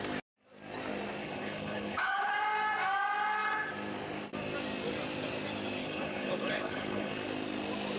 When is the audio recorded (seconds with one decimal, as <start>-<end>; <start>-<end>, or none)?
0.0-1.2; 2.3-5.8; 7.1-8.0